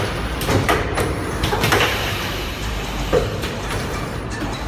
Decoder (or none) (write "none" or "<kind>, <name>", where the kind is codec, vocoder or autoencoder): vocoder, BigVGAN v2